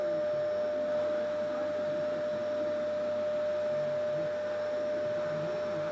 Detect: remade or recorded recorded